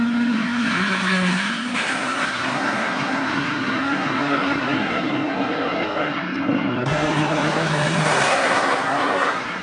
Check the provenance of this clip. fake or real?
fake